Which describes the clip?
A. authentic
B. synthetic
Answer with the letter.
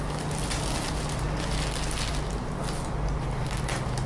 A